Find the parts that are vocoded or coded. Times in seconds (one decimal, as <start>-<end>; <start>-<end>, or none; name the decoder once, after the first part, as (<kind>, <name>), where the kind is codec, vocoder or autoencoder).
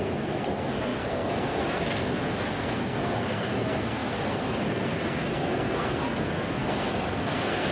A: 0.0-7.7 (codec, SNAC)